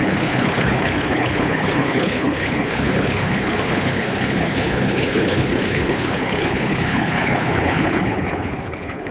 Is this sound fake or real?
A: fake